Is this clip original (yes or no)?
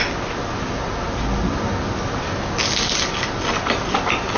yes